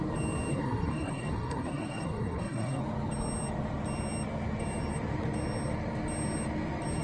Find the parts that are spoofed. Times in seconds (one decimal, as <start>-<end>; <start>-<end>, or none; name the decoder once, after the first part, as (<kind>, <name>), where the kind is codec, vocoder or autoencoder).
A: 0.5-2.8 (codec, SNAC)